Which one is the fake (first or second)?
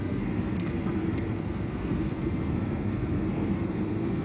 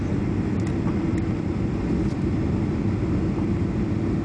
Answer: first